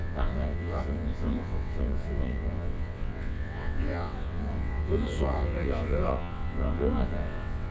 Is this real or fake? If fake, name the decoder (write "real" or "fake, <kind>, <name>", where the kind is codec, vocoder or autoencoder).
fake, vocoder, WaveNeXt